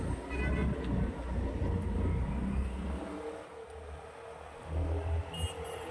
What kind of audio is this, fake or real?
real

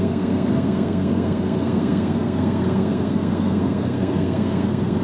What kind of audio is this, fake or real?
fake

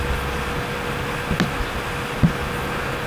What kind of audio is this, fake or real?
real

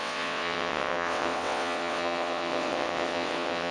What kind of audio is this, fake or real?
fake